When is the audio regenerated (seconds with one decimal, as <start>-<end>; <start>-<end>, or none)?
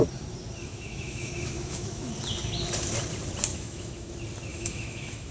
0.6-2.1; 3.5-4.1; 4.5-5.3